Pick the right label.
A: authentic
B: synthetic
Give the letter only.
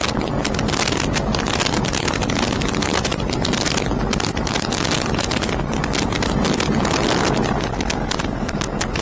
A